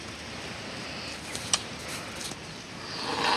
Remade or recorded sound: recorded